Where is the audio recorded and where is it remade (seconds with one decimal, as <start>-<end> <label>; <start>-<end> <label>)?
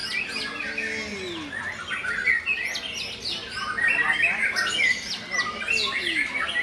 0.0-6.6 recorded